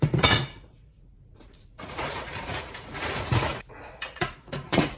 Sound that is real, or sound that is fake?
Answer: fake